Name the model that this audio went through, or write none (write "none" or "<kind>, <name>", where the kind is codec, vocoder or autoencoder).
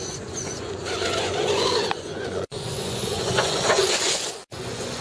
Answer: vocoder, Vocos